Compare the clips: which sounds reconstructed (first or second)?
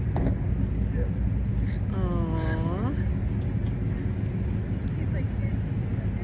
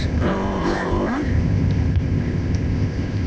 second